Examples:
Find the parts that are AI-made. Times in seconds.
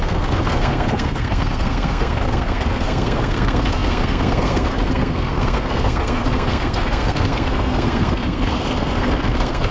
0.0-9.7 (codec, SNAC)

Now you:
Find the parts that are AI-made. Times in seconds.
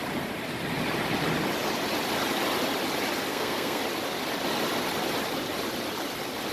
3.3-3.8 (codec, SNAC)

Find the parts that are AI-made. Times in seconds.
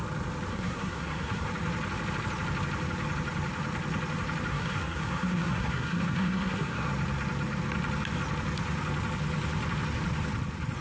0.5-1.5 (codec, SNAC); 4.5-6.9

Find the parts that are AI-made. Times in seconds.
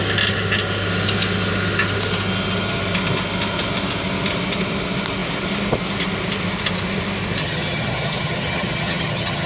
7.4-9.5 (vocoder, HiFi-GAN)